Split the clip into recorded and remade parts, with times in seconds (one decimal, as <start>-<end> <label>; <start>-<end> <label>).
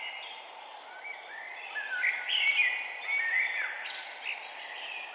0.0-5.1 recorded